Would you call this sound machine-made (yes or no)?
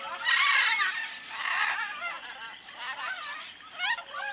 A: no